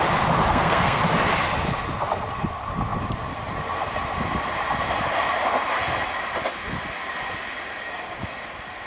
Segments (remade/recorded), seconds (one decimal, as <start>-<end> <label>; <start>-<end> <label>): 0.0-0.5 recorded; 0.5-1.0 remade; 1.0-8.9 recorded